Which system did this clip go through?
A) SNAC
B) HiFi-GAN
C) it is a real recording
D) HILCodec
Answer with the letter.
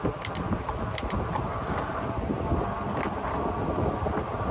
C